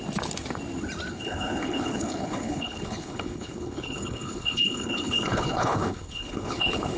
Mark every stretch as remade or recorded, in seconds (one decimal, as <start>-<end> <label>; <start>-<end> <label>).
0.0-1.1 recorded; 1.1-7.0 remade